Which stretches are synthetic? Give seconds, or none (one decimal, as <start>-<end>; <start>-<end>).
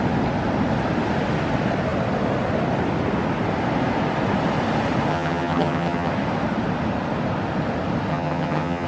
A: 5.1-6.1; 8.1-8.9